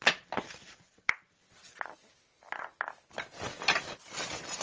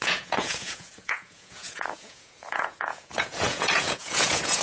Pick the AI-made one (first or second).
second